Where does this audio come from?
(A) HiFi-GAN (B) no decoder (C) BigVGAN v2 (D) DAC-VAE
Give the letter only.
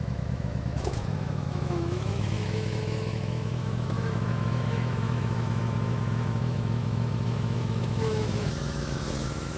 D